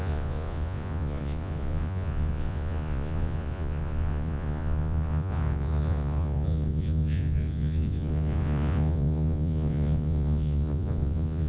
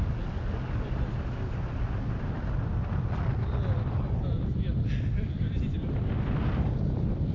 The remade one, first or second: first